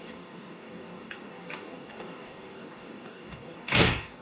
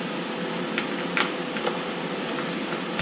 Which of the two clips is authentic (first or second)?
second